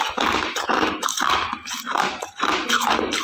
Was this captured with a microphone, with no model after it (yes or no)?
yes